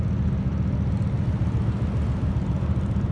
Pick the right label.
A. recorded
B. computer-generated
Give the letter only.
A